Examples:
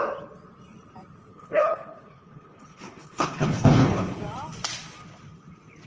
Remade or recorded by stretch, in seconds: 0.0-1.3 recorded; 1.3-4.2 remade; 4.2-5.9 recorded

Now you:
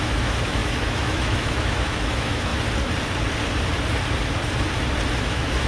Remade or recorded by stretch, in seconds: 0.0-2.5 remade; 2.5-5.2 recorded; 5.2-5.7 remade

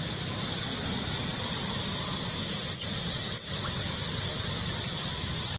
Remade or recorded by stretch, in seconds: 0.0-5.6 recorded

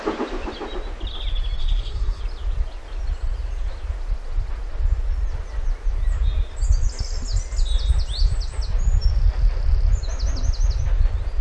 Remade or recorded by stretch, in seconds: 0.0-1.6 recorded; 1.6-2.2 remade; 2.2-11.4 recorded